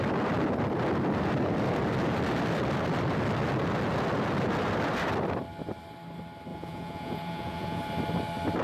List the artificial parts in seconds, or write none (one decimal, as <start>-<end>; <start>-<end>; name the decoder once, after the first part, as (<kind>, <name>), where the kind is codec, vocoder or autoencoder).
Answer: 6.5-7.8 (vocoder, Vocos)